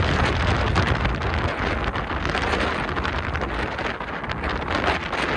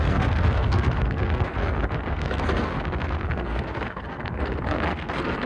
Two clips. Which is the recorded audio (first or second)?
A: first